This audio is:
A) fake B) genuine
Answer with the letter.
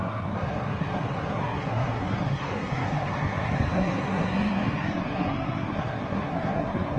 A